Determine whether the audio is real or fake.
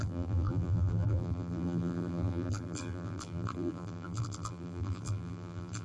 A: fake